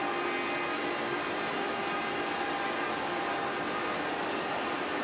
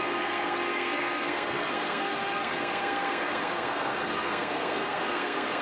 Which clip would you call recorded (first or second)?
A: first